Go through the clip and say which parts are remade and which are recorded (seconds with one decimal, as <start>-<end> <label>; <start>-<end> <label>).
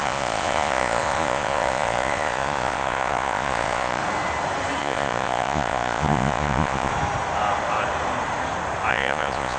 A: 0.0-4.0 remade; 4.0-4.8 recorded; 4.8-6.9 remade; 6.9-8.9 recorded; 8.9-9.6 remade